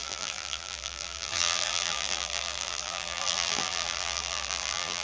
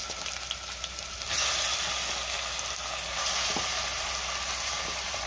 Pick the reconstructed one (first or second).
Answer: first